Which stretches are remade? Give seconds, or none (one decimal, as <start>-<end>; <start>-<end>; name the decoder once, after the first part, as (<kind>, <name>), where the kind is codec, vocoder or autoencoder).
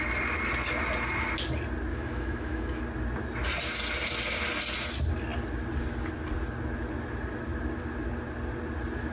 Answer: 1.9-2.8 (autoencoder, DAC-VAE)